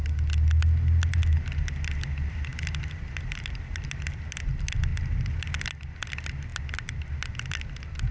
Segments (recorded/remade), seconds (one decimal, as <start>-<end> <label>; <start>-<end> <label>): 0.0-8.1 recorded